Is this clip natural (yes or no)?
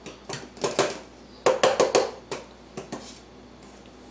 yes